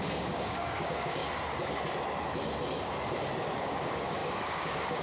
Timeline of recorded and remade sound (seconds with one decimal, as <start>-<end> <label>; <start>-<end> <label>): 0.0-1.2 remade; 1.2-3.6 recorded; 3.6-5.0 remade